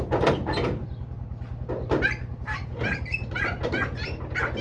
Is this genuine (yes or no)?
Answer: yes